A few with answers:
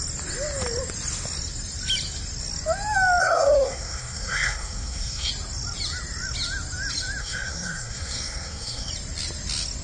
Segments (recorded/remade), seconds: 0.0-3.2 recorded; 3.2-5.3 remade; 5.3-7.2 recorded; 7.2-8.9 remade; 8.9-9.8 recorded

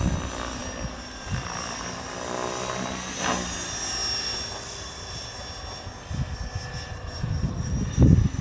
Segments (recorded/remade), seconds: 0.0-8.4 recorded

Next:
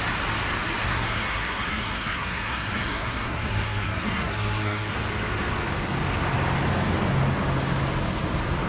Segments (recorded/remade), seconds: 0.0-0.8 recorded; 0.8-4.9 remade; 4.9-8.7 recorded

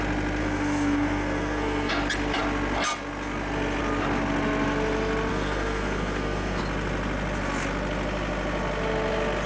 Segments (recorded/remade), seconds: 0.0-0.4 recorded; 0.4-1.9 remade; 1.9-5.3 recorded; 5.3-6.6 remade; 6.6-9.5 recorded

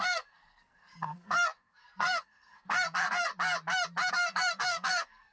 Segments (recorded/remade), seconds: 0.0-3.3 remade; 3.3-4.1 recorded; 4.1-5.3 remade